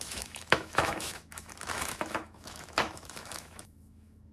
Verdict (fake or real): fake